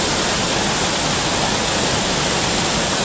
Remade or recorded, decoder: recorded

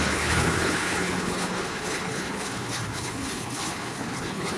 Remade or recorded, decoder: remade, codec, HILCodec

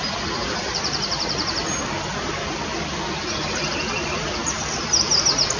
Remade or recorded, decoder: recorded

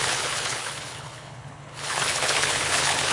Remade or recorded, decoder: remade, codec, HILCodec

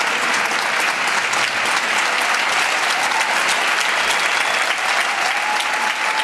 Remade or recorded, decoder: recorded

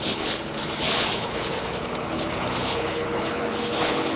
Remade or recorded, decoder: remade, codec, HILCodec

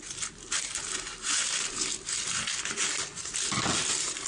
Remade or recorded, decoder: recorded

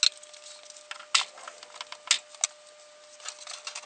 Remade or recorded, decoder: recorded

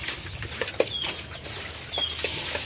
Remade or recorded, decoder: recorded